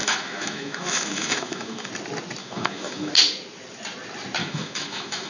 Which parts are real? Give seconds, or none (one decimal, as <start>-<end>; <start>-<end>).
1.9-2.4; 3.1-4.4